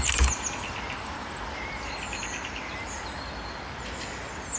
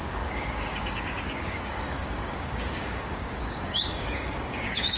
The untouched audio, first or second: first